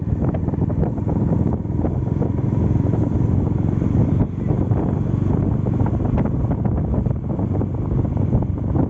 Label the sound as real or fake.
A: real